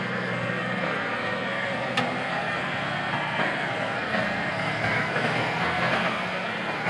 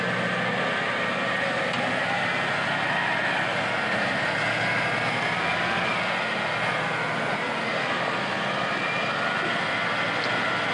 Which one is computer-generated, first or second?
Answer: first